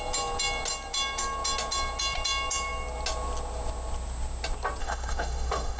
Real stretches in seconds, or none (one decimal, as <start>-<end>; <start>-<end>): 0.0-4.8